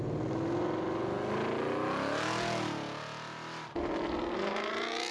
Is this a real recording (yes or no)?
yes